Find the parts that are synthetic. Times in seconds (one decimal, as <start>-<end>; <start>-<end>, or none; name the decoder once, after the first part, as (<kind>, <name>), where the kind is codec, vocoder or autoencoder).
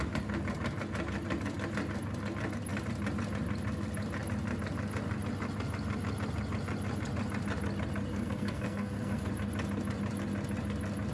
8.1-9.3 (codec, SNAC)